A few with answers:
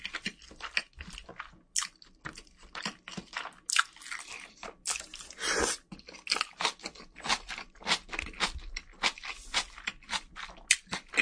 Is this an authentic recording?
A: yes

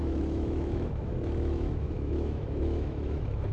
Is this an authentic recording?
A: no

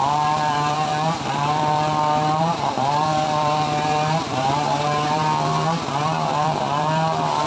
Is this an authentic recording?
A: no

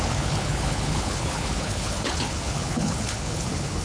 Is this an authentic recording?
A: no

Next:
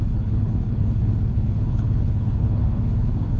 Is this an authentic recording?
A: no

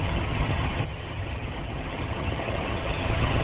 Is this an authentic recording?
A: no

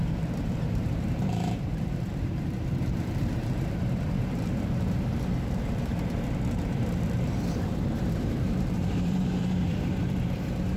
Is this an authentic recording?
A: no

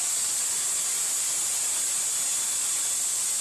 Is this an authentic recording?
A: yes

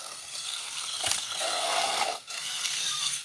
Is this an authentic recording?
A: no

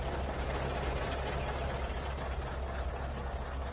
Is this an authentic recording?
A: yes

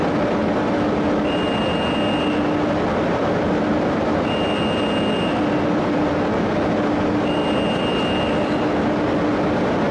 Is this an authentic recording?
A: yes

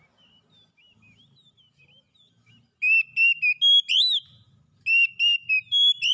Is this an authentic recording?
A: yes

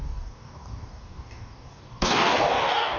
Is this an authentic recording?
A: no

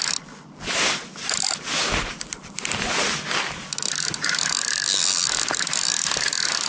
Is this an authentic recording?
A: yes